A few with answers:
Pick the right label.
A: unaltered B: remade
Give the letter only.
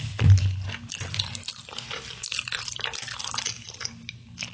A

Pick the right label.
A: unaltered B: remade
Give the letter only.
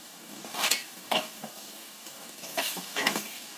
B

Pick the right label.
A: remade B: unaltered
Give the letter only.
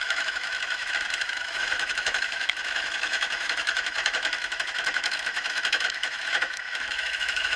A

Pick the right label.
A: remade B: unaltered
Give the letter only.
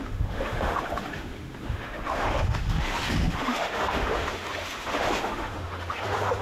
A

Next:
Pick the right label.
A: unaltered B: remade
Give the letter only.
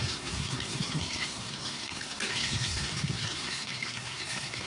B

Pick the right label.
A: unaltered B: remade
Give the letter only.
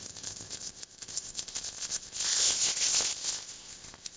B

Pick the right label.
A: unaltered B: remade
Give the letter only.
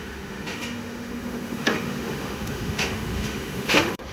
B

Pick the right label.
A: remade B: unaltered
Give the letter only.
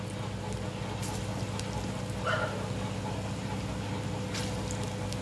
B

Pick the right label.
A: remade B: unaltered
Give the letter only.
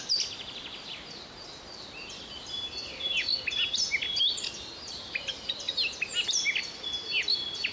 B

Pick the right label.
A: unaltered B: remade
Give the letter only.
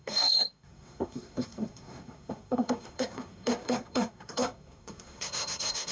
B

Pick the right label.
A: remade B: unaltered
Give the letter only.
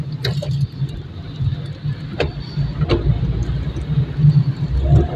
B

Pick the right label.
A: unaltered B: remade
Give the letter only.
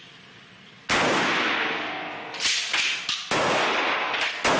A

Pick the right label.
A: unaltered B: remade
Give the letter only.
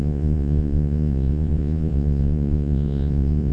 B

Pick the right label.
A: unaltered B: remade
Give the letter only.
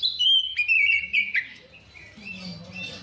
A